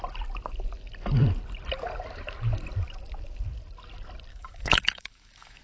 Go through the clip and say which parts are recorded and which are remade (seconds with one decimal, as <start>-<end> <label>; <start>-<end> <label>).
0.0-4.3 recorded; 4.3-5.6 remade